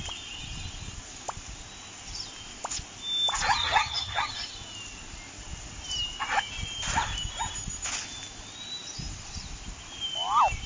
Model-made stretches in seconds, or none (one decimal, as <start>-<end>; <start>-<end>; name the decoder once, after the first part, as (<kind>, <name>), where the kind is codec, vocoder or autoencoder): 3.6-4.3 (vocoder, HiFi-GAN)